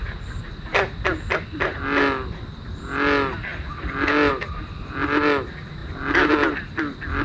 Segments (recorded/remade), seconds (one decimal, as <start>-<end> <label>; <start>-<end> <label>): 0.0-7.2 recorded